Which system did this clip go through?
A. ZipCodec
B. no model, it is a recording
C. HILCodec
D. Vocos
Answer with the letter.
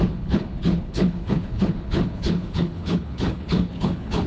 C